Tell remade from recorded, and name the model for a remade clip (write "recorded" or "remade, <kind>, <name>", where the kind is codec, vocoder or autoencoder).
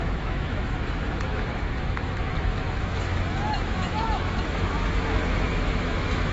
remade, autoencoder, DAC-VAE